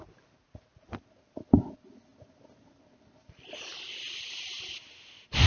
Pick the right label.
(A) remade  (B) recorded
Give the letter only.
B